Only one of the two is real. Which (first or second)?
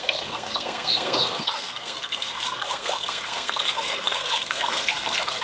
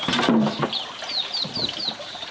second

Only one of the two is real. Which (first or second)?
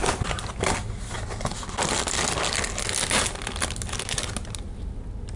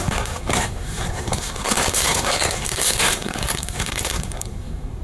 first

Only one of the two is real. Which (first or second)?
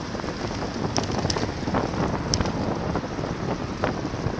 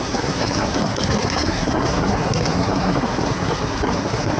first